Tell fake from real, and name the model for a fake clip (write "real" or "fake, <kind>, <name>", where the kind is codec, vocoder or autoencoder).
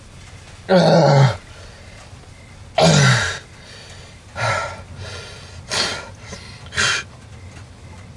real